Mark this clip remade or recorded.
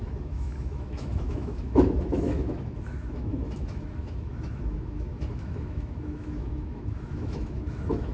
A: remade